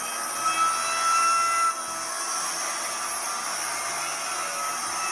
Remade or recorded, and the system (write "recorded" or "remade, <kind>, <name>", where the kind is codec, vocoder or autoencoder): recorded